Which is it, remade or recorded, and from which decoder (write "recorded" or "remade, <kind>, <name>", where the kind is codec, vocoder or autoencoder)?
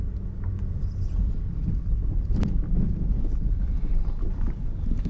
recorded